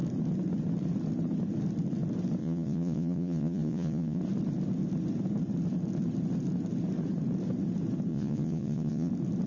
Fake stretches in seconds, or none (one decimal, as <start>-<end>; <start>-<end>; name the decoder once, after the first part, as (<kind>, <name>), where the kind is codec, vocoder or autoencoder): 2.4-4.2 (vocoder, Vocos); 8.1-9.1